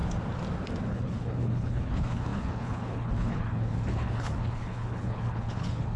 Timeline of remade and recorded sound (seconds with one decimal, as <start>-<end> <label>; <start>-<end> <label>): 0.0-0.9 recorded; 0.9-6.0 remade